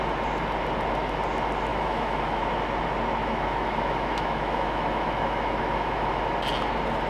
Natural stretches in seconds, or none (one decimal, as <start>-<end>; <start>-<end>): 0.0-1.7; 2.4-3.2; 6.2-7.1